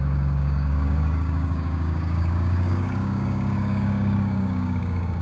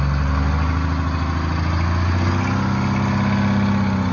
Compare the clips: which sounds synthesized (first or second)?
first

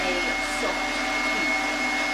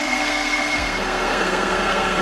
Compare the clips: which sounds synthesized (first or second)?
second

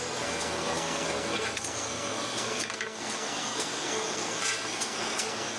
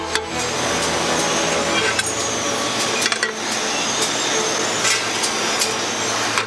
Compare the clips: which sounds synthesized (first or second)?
first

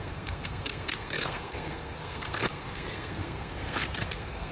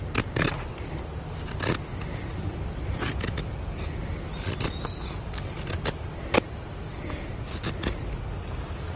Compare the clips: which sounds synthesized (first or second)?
first